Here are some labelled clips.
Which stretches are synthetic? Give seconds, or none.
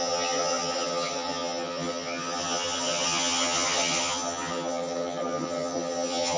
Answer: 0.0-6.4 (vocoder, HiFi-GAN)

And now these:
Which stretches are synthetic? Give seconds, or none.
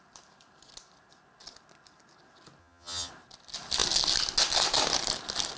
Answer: 2.6-3.1 (vocoder, HiFi-GAN)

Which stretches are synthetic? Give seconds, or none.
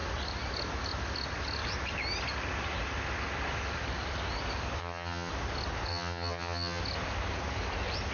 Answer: 4.8-5.3 (vocoder, HiFi-GAN); 5.9-6.8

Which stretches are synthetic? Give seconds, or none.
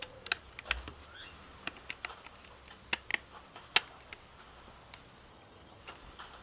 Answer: 5.3-5.8 (vocoder, HiFi-GAN)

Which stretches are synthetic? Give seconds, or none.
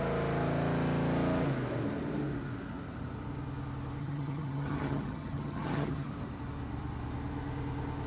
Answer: 4.0-6.1 (vocoder, HiFi-GAN)